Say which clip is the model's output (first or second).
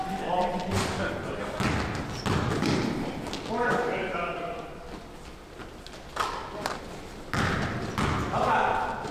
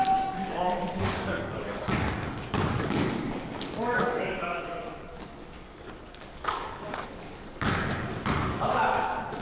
second